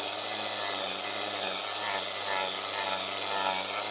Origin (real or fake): real